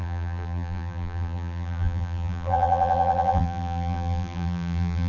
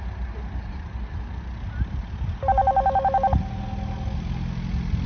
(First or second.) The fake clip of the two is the first